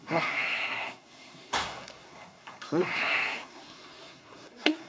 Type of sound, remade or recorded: remade